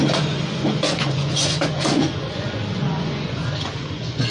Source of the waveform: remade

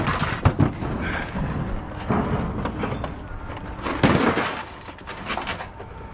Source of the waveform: recorded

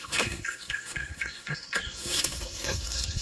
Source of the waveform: remade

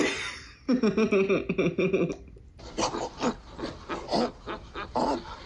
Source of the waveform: recorded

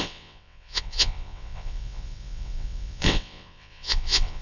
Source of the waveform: remade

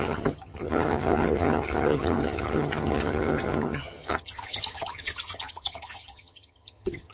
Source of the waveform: remade